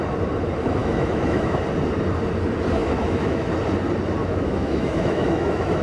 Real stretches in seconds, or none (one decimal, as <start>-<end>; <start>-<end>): 0.0-0.8; 1.6-2.8; 3.5-4.2